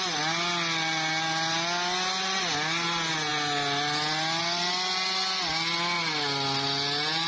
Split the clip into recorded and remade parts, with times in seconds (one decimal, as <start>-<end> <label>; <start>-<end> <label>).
0.0-7.3 recorded